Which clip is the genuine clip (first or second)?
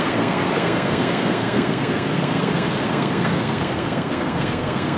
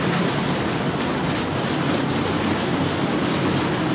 second